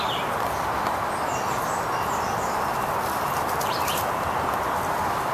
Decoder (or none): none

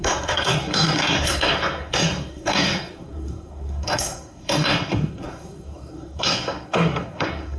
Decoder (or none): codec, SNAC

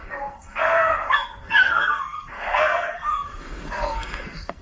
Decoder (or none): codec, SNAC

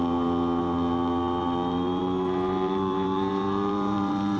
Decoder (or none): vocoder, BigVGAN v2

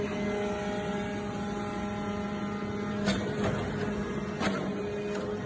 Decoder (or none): none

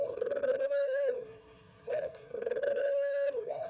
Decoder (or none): codec, SNAC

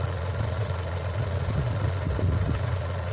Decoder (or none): vocoder, Vocos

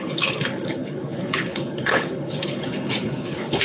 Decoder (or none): codec, HILCodec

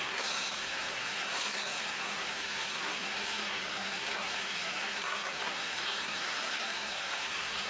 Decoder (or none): codec, SNAC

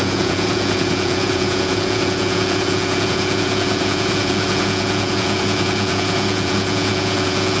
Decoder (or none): vocoder, Vocos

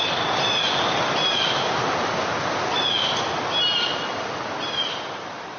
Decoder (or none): none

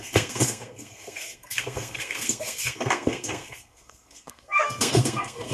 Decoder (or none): codec, SNAC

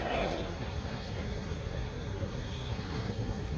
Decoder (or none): codec, SNAC